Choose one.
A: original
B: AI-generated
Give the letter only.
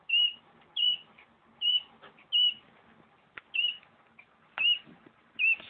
A